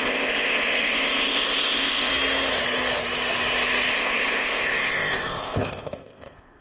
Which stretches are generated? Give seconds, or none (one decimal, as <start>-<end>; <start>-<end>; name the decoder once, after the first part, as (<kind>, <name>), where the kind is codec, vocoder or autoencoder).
0.0-2.1 (codec, ZipCodec); 3.9-6.6